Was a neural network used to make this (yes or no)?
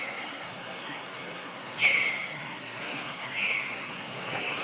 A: yes